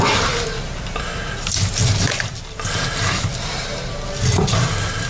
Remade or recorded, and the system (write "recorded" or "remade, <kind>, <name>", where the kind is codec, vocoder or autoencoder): recorded